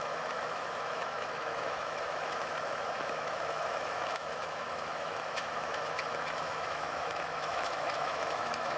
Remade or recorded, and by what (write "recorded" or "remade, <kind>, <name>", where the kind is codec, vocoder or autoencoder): remade, autoencoder, DAC-VAE